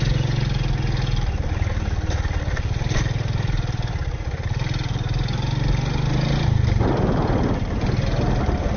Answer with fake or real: real